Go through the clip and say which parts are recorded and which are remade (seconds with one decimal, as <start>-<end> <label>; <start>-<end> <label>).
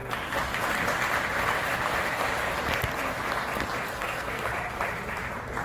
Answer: 0.0-3.9 recorded; 3.9-4.5 remade; 4.5-5.6 recorded